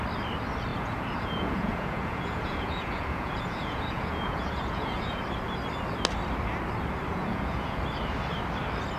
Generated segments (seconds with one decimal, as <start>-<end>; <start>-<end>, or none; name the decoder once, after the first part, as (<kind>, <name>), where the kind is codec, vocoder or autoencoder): 0.7-5.2 (vocoder, Vocos); 7.1-7.8